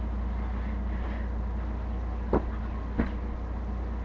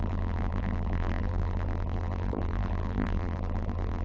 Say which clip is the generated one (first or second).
second